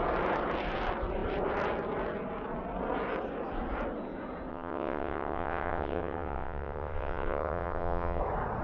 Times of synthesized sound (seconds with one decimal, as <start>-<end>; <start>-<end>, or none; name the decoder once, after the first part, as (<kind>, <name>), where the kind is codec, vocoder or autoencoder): 4.5-8.2 (vocoder, WaveNeXt)